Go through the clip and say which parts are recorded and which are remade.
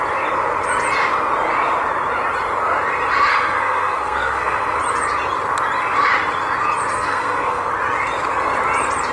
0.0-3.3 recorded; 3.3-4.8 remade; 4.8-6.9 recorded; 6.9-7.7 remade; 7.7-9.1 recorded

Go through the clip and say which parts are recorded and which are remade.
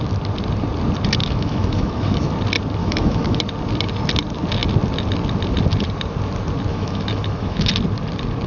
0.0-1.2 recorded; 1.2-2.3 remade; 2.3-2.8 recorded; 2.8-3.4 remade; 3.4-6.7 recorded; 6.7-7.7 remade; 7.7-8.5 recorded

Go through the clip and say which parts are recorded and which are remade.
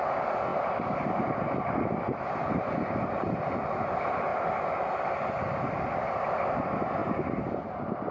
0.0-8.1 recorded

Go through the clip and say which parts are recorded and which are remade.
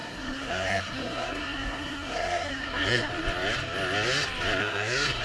0.0-3.1 remade; 3.1-4.6 recorded; 4.6-5.2 remade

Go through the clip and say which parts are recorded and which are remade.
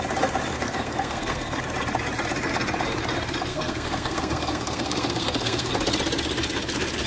0.0-0.5 recorded; 0.5-1.6 remade; 1.6-3.5 recorded; 3.5-5.7 remade; 5.7-7.1 recorded